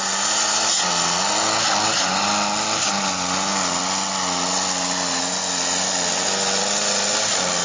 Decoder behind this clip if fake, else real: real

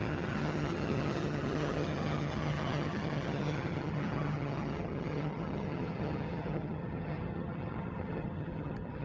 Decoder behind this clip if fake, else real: fake, vocoder, HiFi-GAN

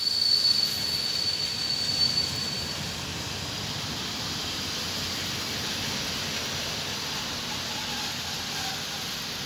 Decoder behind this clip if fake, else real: real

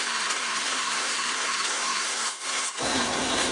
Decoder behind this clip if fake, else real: fake, codec, SNAC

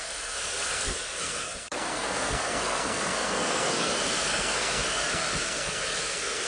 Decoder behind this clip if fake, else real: fake, codec, SNAC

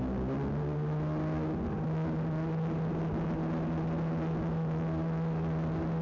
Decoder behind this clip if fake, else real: real